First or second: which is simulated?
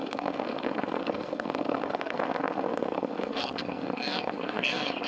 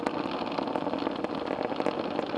first